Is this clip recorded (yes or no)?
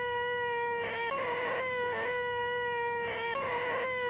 no